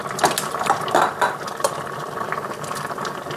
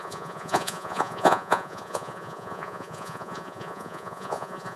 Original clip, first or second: first